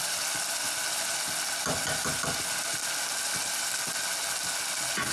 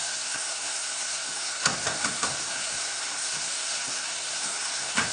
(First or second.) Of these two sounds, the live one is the first